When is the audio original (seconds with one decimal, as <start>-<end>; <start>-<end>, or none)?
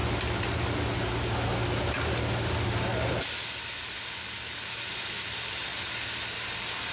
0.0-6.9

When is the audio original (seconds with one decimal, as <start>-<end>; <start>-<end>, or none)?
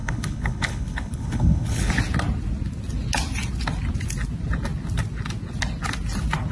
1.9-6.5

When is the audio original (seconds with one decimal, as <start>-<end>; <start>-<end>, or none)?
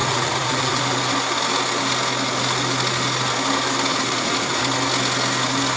0.8-3.9; 4.6-5.8